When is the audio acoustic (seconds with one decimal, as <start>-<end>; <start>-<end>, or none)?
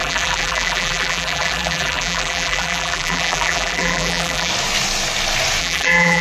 4.5-5.6